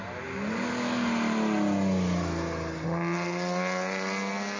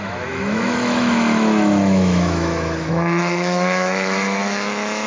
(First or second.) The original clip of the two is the first